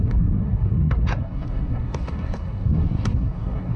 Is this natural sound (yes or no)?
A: no